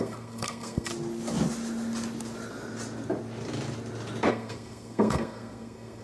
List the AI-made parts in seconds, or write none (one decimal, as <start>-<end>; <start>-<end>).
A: 0.0-0.9; 4.3-6.0